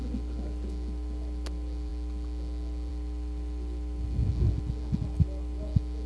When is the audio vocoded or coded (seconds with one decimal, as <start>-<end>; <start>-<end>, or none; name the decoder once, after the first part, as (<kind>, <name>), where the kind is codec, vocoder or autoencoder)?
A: none